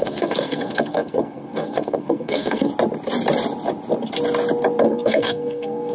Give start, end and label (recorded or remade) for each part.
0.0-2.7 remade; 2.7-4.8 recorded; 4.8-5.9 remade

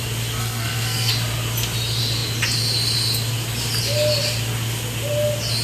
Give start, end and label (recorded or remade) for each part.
0.0-0.4 recorded; 0.4-1.1 remade; 1.1-5.6 recorded

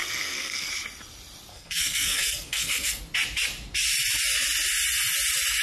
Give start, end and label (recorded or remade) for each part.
0.0-0.7 remade; 0.7-1.5 recorded; 1.5-3.0 remade; 3.0-5.6 recorded

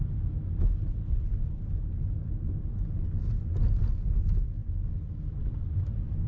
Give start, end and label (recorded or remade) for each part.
0.0-6.3 recorded

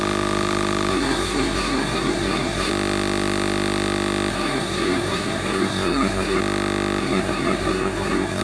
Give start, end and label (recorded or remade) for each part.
0.0-0.9 recorded; 0.9-2.7 remade; 2.7-4.3 recorded; 4.3-6.4 remade; 6.4-7.0 recorded; 7.0-8.4 remade

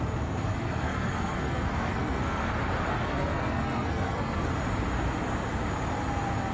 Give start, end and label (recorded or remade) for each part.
0.0-0.5 recorded; 0.5-2.5 remade; 2.5-2.9 recorded; 2.9-4.5 remade; 4.5-6.5 recorded

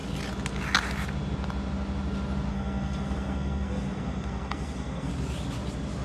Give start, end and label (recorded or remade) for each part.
0.0-2.5 recorded; 2.5-5.1 remade; 5.1-6.0 recorded